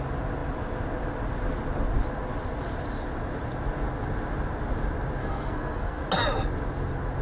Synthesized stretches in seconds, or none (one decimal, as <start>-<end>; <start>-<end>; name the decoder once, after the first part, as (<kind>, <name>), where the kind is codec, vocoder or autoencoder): 5.2-6.0 (codec, SNAC)